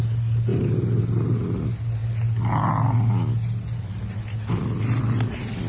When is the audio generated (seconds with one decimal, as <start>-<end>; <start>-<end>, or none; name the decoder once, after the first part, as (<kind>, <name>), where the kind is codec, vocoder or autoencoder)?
none